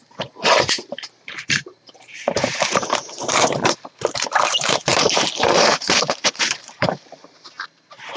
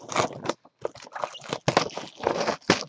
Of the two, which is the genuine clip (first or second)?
second